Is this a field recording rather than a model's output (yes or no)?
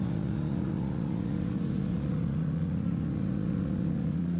no